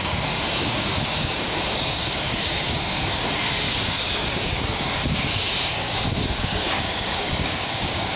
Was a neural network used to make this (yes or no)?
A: yes